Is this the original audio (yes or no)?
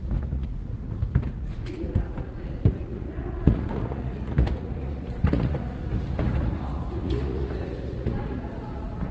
no